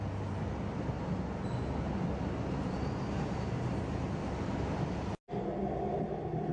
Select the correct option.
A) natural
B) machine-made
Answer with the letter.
A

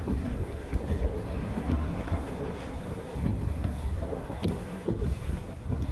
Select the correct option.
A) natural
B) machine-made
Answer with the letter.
B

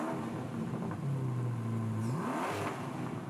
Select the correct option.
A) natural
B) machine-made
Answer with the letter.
A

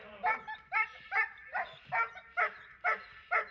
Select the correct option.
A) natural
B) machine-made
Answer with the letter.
A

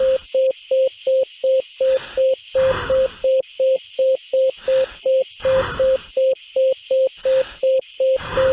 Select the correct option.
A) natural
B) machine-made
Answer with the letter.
A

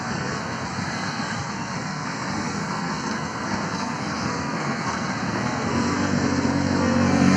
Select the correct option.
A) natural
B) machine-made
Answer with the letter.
B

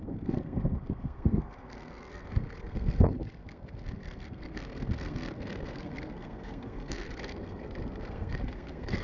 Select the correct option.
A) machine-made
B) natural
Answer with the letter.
A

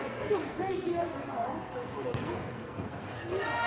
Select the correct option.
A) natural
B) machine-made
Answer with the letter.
B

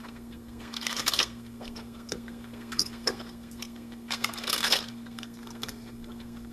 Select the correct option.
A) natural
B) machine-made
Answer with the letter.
B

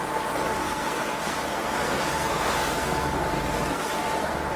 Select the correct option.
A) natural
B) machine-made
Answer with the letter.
B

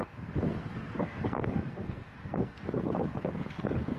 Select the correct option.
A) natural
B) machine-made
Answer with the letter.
B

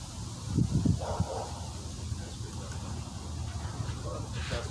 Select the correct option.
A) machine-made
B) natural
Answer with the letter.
B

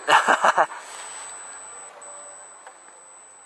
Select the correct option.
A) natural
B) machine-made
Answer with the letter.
A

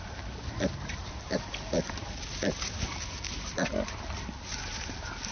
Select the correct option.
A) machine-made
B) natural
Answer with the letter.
B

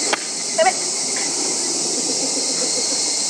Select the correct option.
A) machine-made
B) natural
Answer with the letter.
B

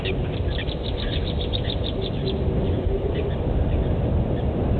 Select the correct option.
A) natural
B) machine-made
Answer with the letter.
A